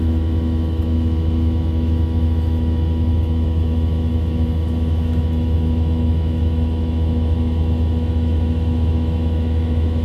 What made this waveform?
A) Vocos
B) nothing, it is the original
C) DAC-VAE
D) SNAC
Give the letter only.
C